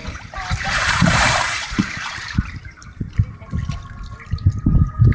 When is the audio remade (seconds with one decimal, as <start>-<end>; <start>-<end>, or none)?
0.0-3.1